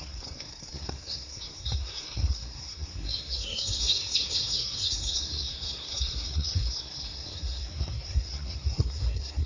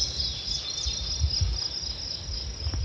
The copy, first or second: first